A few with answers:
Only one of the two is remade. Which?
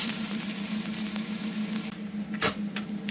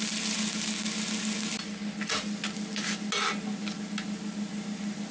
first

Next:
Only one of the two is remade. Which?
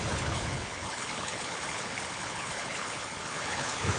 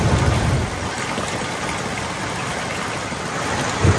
first